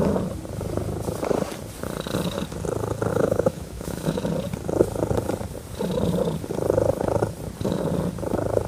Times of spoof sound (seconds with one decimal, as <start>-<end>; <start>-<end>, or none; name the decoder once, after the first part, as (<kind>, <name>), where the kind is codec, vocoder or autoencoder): 3.1-4.2 (autoencoder, DAC-VAE)